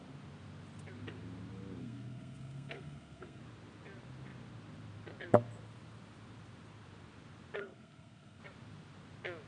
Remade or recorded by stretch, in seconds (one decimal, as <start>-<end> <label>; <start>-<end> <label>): 0.0-1.8 recorded; 1.8-3.4 remade; 3.4-7.6 recorded; 7.6-8.4 remade; 8.4-9.5 recorded